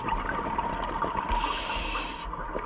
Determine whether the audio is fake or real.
real